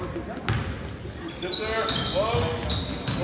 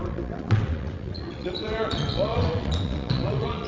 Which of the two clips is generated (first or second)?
second